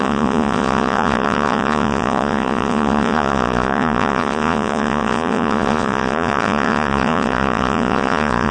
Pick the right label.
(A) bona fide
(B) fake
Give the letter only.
B